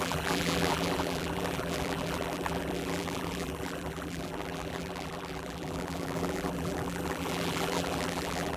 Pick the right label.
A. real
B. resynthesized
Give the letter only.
B